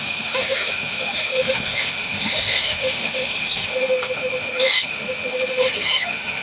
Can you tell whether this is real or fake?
fake